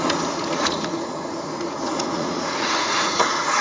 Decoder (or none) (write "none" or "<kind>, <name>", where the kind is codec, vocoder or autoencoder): vocoder, Vocos